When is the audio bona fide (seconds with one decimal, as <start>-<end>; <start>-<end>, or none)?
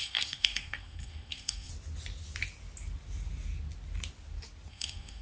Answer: 1.7-4.7